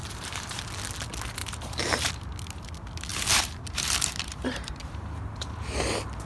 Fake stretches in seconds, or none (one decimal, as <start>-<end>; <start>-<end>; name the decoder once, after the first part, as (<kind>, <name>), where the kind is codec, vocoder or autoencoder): 0.0-0.6 (vocoder, BigVGAN v2); 1.4-2.1; 3.1-4.7

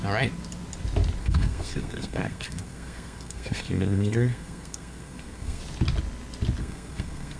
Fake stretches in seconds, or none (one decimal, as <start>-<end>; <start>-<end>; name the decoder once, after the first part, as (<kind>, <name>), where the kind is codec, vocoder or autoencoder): 1.2-5.6 (codec, SNAC); 6.6-7.4

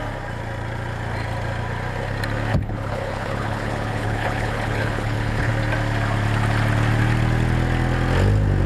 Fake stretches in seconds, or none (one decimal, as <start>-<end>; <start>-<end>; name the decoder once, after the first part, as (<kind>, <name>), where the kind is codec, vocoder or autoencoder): 2.5-5.5 (codec, HILCodec)

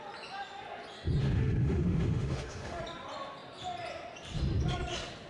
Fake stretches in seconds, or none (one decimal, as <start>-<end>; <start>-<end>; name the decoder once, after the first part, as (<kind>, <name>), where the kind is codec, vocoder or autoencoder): 1.2-2.8 (autoencoder, DAC-VAE)